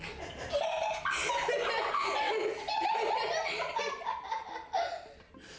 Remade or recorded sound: recorded